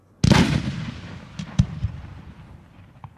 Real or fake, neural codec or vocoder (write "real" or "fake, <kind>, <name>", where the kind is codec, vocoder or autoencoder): real